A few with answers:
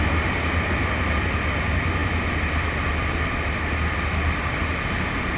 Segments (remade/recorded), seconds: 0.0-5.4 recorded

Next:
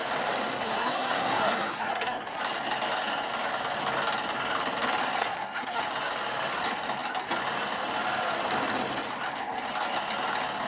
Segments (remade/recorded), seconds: 0.0-0.5 recorded; 0.5-2.4 remade; 2.4-5.2 recorded; 5.2-5.8 remade; 5.8-10.7 recorded

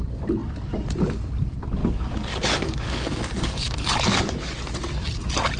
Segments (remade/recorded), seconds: 0.0-1.8 recorded; 1.8-4.5 remade; 4.5-5.6 recorded

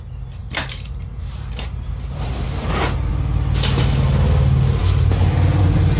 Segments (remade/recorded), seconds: 0.0-0.4 recorded; 0.4-3.1 remade; 3.1-6.0 recorded

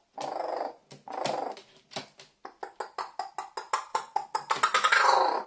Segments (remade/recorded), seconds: 0.0-3.9 recorded; 3.9-4.5 remade; 4.5-5.5 recorded

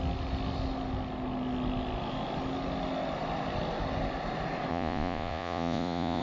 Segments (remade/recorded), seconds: 0.0-4.7 recorded; 4.7-6.2 remade

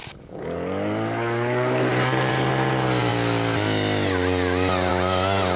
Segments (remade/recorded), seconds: 0.0-2.3 remade; 2.3-5.6 recorded